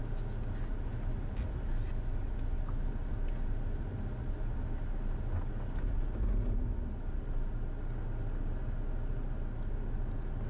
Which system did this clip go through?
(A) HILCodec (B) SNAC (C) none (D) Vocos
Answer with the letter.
C